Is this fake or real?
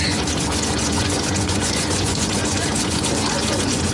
fake